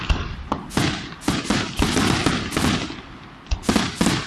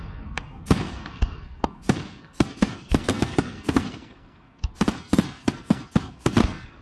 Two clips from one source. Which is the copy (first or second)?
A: second